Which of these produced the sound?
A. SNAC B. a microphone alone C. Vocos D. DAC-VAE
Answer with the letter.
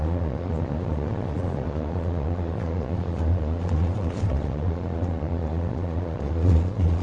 C